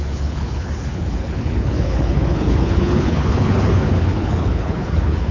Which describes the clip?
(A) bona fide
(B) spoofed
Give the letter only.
B